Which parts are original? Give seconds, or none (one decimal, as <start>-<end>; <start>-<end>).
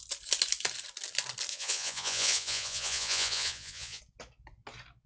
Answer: 0.0-1.5; 4.0-5.1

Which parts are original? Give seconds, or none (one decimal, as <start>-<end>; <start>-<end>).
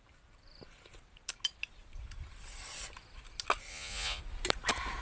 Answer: 0.0-3.7; 4.2-5.0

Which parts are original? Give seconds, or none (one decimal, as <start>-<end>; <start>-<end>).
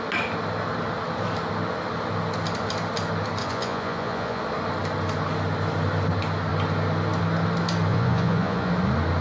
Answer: 0.0-3.4; 4.4-7.9; 8.7-9.2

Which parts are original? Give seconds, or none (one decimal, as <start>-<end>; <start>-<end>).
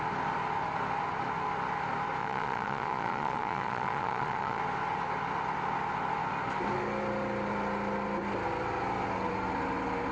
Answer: 0.0-2.2; 4.6-10.1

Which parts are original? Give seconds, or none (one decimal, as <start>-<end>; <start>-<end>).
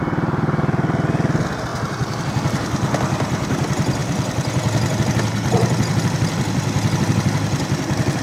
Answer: 0.0-8.2